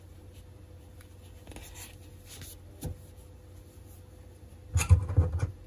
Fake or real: real